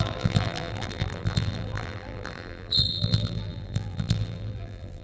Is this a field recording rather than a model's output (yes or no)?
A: no